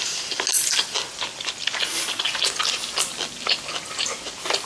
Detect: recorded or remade recorded